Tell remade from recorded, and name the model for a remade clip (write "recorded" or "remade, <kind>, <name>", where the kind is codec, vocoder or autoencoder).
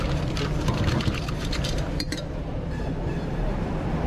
remade, vocoder, BigVGAN v2